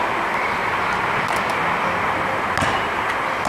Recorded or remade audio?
recorded